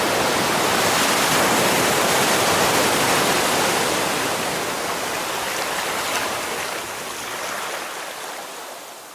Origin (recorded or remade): recorded